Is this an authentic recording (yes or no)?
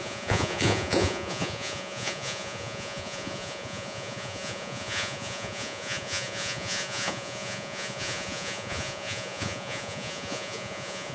no